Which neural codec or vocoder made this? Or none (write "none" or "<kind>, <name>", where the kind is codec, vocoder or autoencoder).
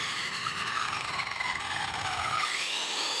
autoencoder, DAC-VAE